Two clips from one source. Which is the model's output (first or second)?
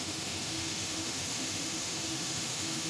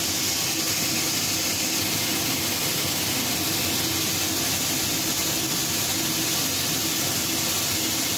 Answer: first